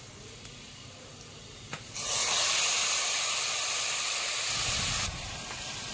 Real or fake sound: real